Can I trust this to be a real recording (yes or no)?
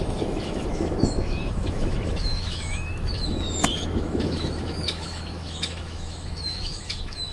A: no